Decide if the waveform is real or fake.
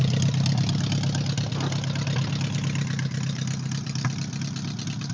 real